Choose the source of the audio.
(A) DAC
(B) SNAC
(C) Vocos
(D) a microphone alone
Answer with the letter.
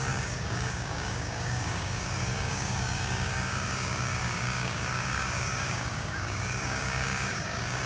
A